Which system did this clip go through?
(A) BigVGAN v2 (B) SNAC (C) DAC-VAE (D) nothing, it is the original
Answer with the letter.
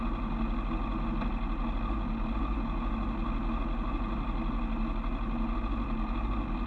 D